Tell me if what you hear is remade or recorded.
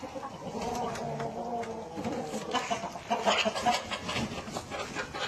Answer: recorded